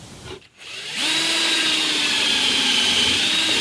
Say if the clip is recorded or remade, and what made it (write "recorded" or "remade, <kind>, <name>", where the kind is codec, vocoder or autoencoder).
remade, vocoder, BigVGAN v2